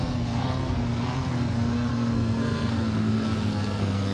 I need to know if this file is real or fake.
fake